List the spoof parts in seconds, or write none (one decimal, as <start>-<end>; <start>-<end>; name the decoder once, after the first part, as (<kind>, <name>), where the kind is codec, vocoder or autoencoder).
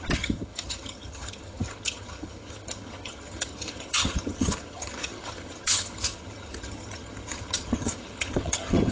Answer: 0.0-8.9 (vocoder, HiFi-GAN)